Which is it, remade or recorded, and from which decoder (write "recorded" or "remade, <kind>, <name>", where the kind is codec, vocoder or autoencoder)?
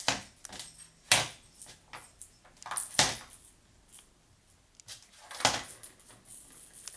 recorded